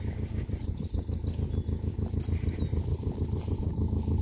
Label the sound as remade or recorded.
recorded